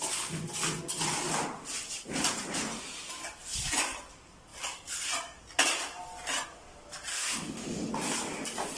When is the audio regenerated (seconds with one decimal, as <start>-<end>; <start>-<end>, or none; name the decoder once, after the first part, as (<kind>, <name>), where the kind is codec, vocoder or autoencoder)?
7.1-7.9 (autoencoder, DAC-VAE)